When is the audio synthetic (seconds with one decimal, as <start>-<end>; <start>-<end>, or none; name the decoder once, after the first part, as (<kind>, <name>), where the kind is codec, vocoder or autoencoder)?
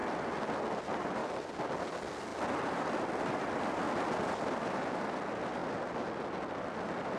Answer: 2.3-5.0 (vocoder, BigVGAN v2)